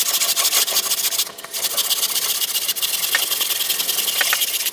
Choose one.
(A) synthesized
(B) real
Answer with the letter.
B